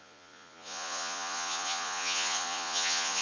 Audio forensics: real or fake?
fake